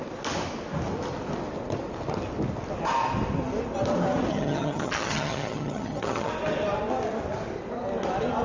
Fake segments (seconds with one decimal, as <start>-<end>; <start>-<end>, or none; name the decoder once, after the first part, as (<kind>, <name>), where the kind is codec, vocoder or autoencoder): 4.3-6.3 (vocoder, HiFi-GAN)